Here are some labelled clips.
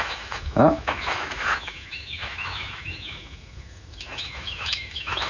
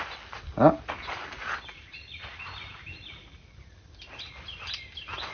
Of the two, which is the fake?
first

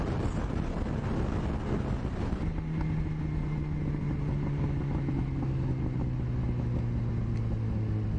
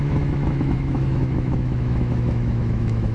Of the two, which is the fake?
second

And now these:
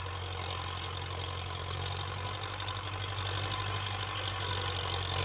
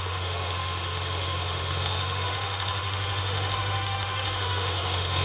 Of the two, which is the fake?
second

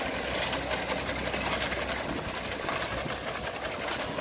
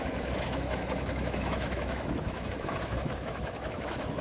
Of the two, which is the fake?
second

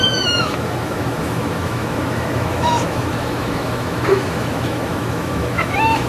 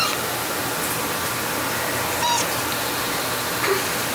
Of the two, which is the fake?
first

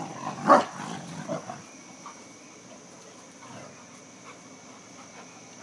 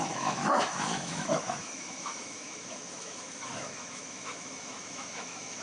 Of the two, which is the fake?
second